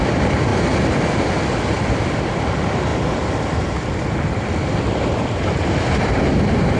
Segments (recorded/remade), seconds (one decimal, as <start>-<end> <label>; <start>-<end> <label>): 0.0-0.5 remade; 0.5-1.9 recorded; 1.9-6.8 remade